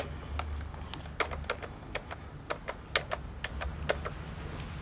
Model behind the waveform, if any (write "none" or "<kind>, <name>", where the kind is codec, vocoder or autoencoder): none